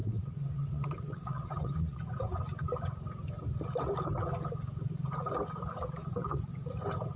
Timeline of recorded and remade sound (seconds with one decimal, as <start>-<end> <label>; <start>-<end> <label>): 0.0-2.0 remade; 2.0-6.2 recorded; 6.2-6.7 remade; 6.7-7.2 recorded